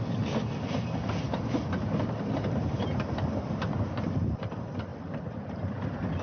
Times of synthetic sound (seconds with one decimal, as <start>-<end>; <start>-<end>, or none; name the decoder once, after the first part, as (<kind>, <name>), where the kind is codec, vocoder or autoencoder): 4.9-5.8 (vocoder, BigVGAN v2)